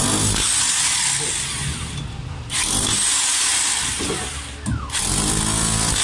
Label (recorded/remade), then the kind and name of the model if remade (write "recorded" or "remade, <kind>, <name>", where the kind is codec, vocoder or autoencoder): recorded